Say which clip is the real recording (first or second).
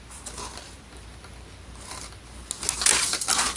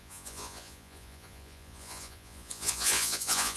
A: first